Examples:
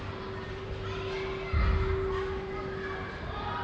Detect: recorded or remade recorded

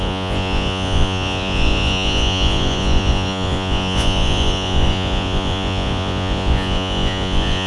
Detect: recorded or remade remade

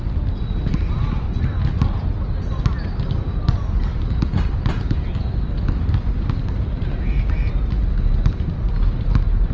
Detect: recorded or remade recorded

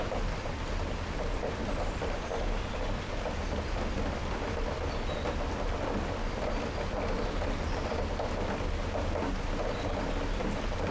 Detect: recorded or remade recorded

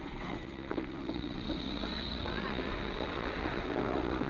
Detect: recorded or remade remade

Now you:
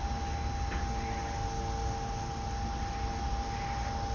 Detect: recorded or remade recorded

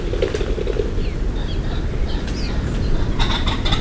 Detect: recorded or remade recorded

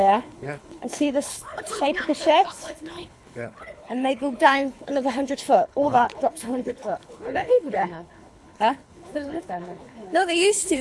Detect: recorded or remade remade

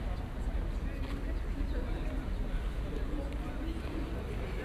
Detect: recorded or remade recorded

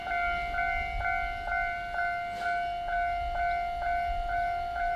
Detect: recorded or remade recorded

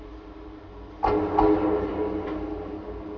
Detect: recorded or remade recorded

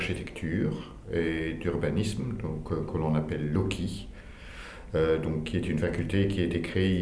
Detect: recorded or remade recorded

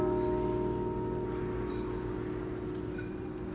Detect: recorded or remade recorded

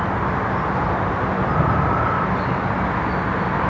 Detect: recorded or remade recorded